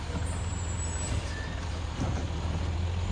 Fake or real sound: real